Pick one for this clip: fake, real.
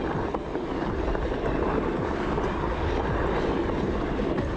real